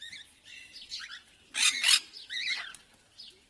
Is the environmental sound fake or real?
real